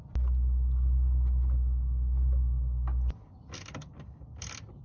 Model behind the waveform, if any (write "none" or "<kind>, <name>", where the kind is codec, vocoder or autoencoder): none